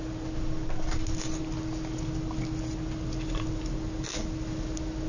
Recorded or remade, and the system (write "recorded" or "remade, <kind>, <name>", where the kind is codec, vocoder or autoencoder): recorded